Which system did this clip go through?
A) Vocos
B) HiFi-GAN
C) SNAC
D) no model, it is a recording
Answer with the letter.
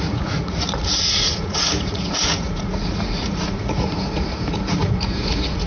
A